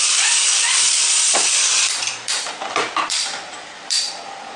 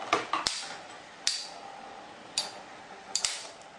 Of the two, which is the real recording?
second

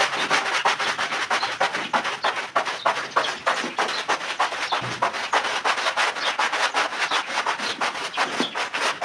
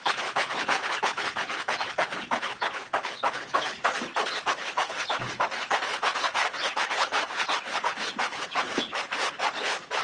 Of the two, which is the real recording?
first